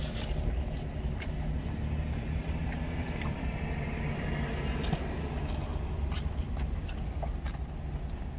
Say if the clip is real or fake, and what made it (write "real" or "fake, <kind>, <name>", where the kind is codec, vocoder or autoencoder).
real